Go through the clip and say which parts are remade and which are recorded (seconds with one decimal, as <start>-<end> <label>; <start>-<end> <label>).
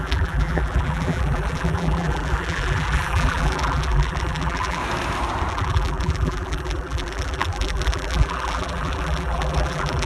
0.0-4.8 remade; 4.8-5.5 recorded; 5.5-10.1 remade